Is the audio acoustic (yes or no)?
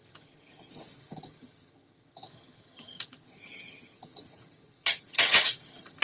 no